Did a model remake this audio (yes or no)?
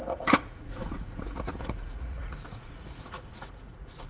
yes